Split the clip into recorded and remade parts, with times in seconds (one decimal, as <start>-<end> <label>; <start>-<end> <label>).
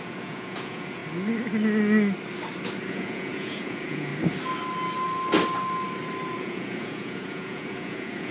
0.0-1.0 remade; 1.0-2.9 recorded; 2.9-4.1 remade; 4.1-6.4 recorded; 6.4-8.3 remade